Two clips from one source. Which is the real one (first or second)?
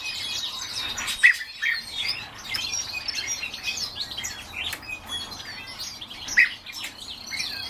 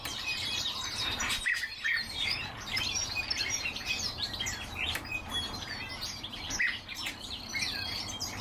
first